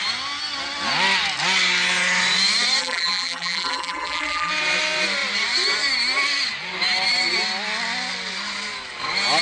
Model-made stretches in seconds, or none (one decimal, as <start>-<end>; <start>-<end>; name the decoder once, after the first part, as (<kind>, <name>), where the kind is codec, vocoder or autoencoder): 2.8-4.5 (vocoder, BigVGAN v2)